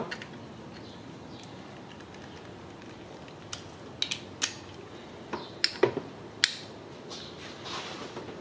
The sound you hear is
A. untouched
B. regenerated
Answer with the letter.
A